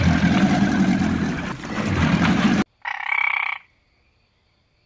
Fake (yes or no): no